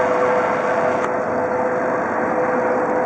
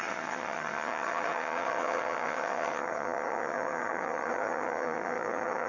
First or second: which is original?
first